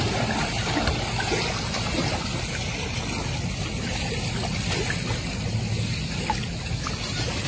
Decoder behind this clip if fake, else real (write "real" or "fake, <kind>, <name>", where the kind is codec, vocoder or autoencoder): real